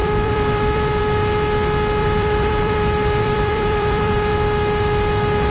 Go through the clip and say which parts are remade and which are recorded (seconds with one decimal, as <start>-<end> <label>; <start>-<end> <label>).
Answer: 0.0-1.0 remade; 1.0-2.0 recorded; 2.0-4.3 remade; 4.3-5.5 recorded